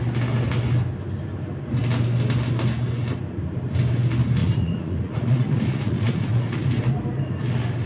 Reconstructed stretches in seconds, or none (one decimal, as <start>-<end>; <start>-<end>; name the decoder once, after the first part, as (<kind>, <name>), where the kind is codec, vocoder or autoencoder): 4.4-6.8 (vocoder, Vocos)